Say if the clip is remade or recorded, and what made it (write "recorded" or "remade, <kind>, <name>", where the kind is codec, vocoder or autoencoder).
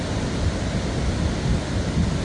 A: recorded